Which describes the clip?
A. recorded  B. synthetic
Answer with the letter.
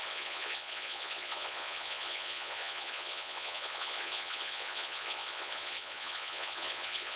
B